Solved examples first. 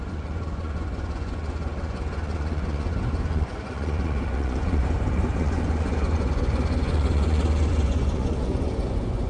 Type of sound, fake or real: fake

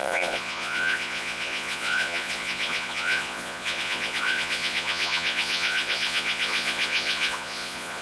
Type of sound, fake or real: fake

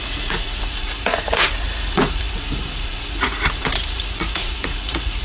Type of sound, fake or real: fake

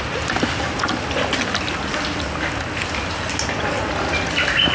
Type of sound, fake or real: real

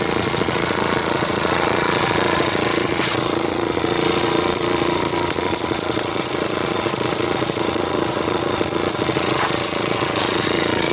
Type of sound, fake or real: fake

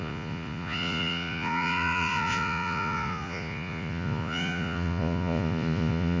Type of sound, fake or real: fake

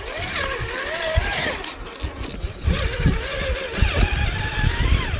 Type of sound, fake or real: real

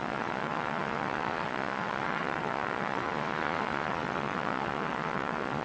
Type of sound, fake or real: fake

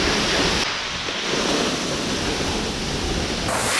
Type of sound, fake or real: real